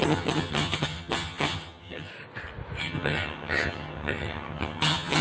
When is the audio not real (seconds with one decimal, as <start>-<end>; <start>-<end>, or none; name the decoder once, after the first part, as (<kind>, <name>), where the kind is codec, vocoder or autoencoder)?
0.0-2.1 (vocoder, HiFi-GAN); 2.8-5.2